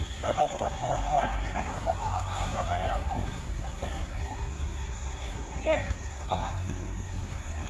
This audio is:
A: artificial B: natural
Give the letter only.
A